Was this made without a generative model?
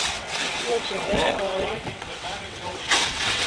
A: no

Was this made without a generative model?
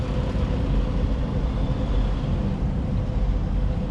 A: yes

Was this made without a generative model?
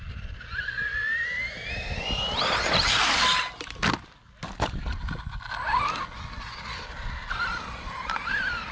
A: yes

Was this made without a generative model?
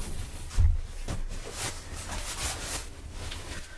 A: yes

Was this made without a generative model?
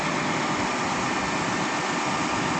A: yes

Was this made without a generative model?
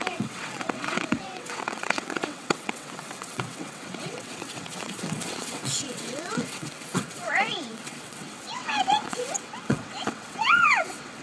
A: no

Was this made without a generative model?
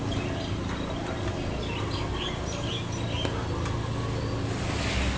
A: yes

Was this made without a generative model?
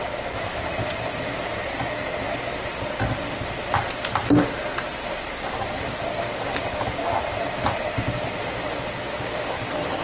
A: yes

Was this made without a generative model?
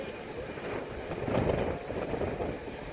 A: yes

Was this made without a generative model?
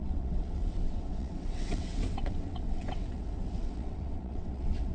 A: no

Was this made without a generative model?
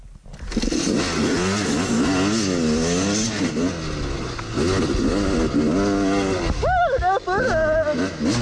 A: yes